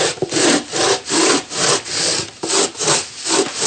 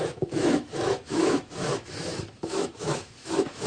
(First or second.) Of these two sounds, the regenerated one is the second